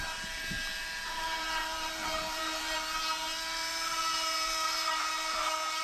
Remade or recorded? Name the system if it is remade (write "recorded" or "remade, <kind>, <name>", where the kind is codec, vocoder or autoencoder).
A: remade, vocoder, BigVGAN v2